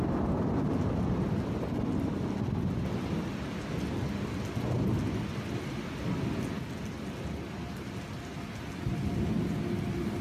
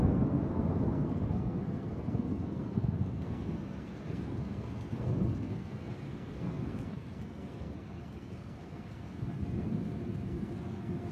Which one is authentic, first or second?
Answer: first